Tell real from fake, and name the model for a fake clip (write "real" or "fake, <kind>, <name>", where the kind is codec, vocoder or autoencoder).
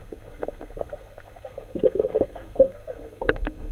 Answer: fake, codec, SNAC